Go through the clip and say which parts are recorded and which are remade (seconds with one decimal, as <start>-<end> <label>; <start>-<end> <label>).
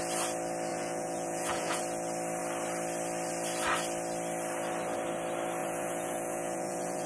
0.0-0.7 recorded; 0.7-1.8 remade; 1.8-5.6 recorded; 5.6-7.1 remade